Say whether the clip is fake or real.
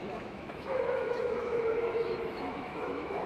fake